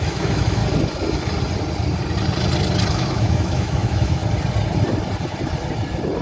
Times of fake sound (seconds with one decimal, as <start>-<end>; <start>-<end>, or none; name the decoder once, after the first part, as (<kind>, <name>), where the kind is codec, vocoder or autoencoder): 0.0-0.6 (autoencoder, DAC-VAE); 2.9-4.2